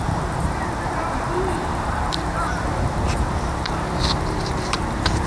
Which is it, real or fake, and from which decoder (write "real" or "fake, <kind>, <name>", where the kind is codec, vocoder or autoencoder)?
fake, vocoder, BigVGAN v2